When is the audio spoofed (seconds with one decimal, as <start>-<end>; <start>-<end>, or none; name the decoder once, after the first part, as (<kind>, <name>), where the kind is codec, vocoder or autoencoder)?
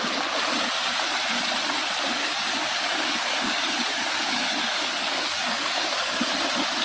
2.2-6.3 (codec, DAC)